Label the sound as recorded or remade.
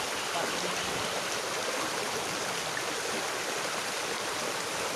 recorded